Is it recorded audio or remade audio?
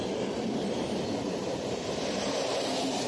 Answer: remade